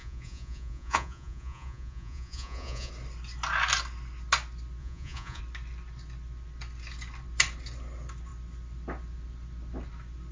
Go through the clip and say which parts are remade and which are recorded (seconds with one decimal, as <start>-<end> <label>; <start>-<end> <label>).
0.0-2.9 remade; 2.9-4.8 recorded; 4.8-5.4 remade; 5.4-10.3 recorded